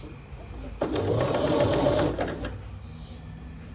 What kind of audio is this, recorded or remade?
recorded